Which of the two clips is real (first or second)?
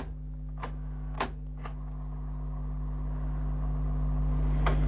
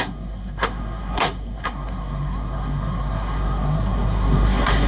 first